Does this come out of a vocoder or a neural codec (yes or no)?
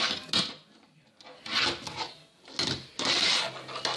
no